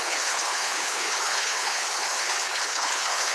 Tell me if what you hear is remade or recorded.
remade